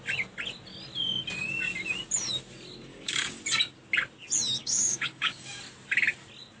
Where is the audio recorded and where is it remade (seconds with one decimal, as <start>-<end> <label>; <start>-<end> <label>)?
0.0-2.9 recorded; 2.9-3.4 remade; 3.4-4.6 recorded; 4.6-5.6 remade; 5.6-6.6 recorded